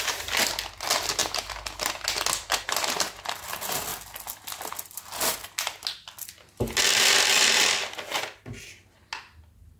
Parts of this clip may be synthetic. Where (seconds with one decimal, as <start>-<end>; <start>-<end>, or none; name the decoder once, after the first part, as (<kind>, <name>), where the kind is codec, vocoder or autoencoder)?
none